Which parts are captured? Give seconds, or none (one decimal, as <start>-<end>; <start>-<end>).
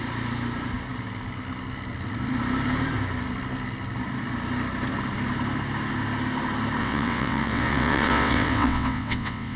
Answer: 0.0-6.8